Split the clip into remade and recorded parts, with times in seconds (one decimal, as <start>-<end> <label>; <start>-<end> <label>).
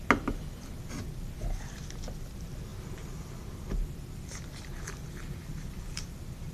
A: 0.0-6.5 recorded